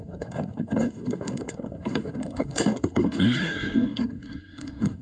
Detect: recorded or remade remade